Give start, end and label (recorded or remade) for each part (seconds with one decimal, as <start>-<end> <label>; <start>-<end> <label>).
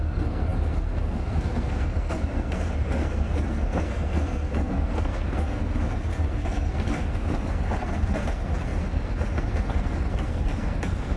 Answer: 0.0-11.2 remade